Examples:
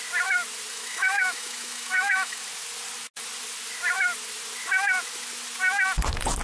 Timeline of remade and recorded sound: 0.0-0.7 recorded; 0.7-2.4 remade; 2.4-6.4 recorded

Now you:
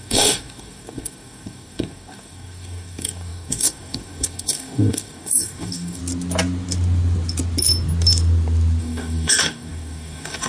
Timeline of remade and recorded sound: 0.0-6.0 remade; 6.0-8.8 recorded; 8.8-10.5 remade